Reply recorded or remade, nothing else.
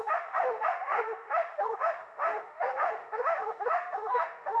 remade